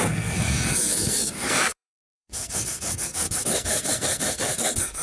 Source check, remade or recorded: remade